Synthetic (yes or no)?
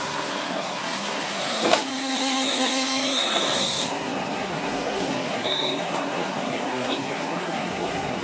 yes